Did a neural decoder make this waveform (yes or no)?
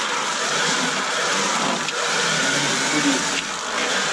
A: no